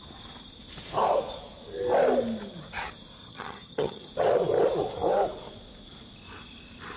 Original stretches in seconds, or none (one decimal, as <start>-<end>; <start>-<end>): 0.0-3.2; 4.1-7.0